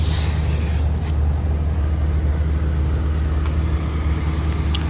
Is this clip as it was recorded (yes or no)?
yes